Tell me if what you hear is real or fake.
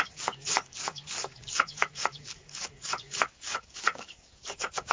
fake